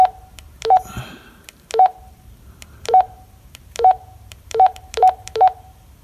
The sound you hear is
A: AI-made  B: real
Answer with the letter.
A